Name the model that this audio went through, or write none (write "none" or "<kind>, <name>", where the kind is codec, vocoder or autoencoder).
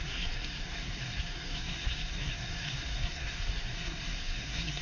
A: codec, SNAC